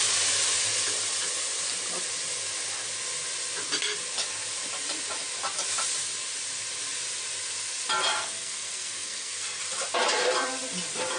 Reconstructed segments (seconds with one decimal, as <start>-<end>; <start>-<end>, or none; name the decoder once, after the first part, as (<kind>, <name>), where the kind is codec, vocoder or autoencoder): 8.1-9.6 (codec, SNAC)